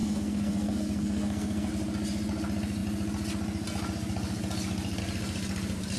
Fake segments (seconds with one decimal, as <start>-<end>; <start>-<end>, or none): 0.0-1.7